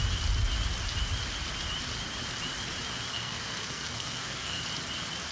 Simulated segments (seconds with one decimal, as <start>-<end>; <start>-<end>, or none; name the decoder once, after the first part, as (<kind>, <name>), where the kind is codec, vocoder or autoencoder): 3.1-4.6 (codec, SNAC)